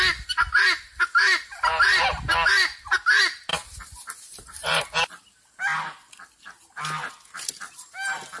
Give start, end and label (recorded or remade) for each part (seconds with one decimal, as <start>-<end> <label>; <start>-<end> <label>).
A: 0.0-1.7 recorded; 1.7-2.2 remade; 2.2-3.5 recorded; 3.5-5.0 remade; 5.0-8.4 recorded